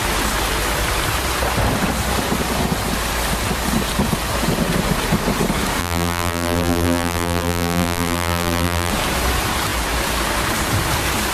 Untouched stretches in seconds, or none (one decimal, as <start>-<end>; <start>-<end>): 0.0-5.8; 8.9-11.3